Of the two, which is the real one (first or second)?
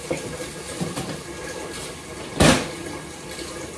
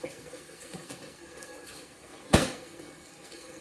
first